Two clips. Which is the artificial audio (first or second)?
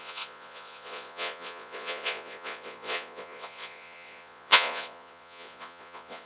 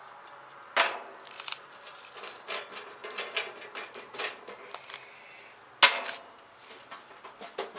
first